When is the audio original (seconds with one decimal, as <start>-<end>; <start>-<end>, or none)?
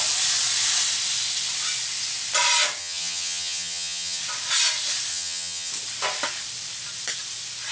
0.0-2.8; 4.2-5.1; 5.7-7.7